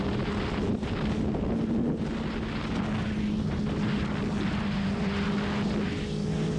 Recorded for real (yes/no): yes